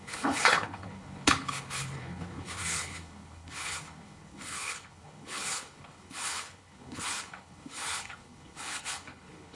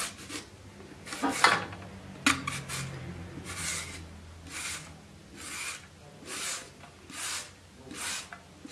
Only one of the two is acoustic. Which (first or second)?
second